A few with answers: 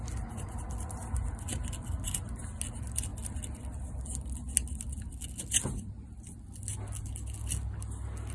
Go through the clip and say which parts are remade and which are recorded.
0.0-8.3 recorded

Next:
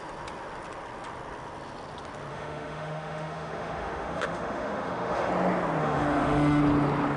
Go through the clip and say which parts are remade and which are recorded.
0.0-2.3 recorded; 2.3-5.3 remade; 5.3-5.8 recorded; 5.8-6.6 remade; 6.6-7.2 recorded